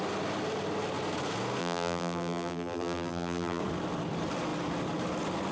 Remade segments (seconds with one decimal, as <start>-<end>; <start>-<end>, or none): 1.6-3.6